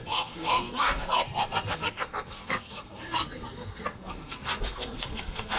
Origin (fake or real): fake